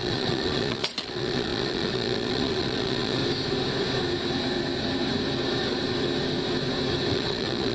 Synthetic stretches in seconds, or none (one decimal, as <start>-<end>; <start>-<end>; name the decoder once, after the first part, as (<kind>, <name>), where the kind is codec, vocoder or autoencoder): 0.0-3.2 (vocoder, Vocos); 7.1-7.7

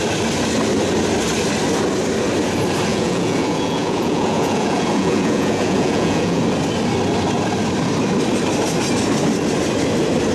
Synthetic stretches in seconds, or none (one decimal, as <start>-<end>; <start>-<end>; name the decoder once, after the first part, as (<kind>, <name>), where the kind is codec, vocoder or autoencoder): 2.9-6.4 (vocoder, Vocos)

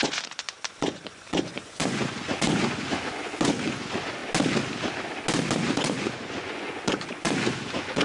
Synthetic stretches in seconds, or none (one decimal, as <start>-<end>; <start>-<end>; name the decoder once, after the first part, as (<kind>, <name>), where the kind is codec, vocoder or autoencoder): 0.0-4.2 (vocoder, Vocos); 5.6-8.0